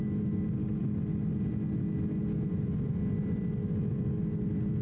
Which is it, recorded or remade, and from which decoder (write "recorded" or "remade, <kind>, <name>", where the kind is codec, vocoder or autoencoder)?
recorded